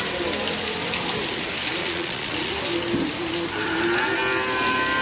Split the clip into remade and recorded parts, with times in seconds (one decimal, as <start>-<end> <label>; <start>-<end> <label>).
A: 0.0-1.8 recorded; 1.8-2.5 remade; 2.5-5.0 recorded